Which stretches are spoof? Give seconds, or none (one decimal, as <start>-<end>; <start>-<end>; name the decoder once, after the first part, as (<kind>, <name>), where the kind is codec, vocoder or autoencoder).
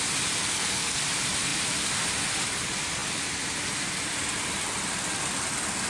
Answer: 0.4-1.0 (codec, SNAC)